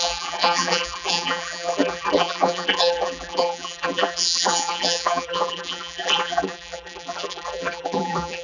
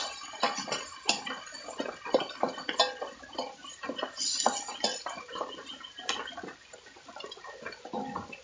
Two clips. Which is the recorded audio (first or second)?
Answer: second